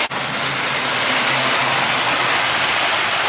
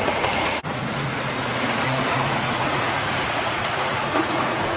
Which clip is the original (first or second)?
first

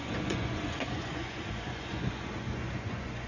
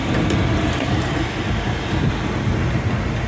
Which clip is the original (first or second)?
second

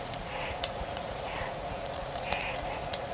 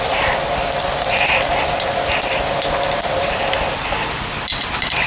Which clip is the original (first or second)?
second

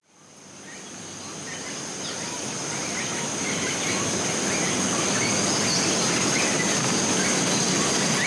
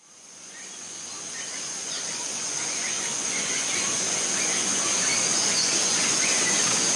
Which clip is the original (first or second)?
first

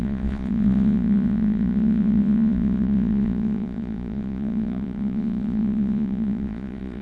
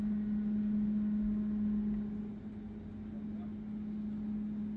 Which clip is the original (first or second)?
second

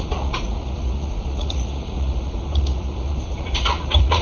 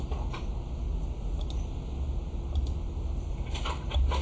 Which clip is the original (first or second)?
second